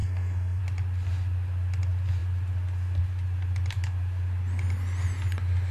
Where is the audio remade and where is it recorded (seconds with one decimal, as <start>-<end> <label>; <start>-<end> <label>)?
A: 0.0-0.6 remade; 0.6-5.7 recorded